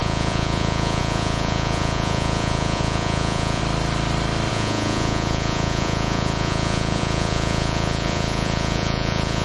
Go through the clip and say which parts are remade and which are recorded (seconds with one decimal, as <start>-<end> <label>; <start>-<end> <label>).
0.0-3.6 remade; 3.6-4.5 recorded; 4.5-9.4 remade

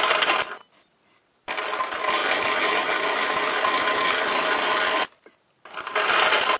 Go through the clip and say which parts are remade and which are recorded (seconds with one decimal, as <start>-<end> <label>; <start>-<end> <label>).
0.0-6.6 recorded

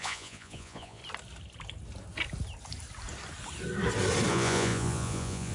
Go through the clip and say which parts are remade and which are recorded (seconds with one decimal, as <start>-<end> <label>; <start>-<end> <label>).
0.0-1.0 remade; 1.0-4.3 recorded; 4.3-5.5 remade

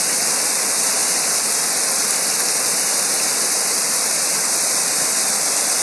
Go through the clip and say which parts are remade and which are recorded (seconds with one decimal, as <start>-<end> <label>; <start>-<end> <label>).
0.0-5.8 recorded

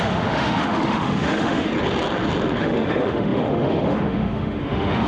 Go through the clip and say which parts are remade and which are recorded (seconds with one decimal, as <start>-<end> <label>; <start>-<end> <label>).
0.0-1.7 remade; 1.7-2.6 recorded; 2.6-5.1 remade

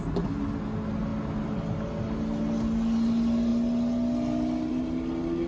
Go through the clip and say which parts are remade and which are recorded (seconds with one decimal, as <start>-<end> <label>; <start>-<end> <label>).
0.0-5.5 recorded

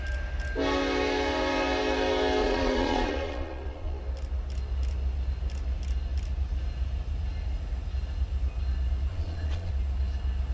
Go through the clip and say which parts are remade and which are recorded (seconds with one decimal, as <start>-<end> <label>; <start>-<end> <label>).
0.0-2.4 recorded; 2.4-4.0 remade; 4.0-9.1 recorded; 9.1-9.7 remade; 9.7-10.5 recorded

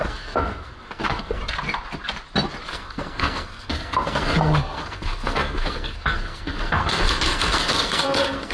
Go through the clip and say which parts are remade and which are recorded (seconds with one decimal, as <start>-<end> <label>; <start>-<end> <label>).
0.0-1.4 remade; 1.4-2.7 recorded; 2.7-8.5 remade